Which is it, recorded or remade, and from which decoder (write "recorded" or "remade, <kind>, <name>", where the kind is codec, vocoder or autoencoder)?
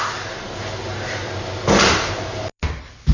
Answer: recorded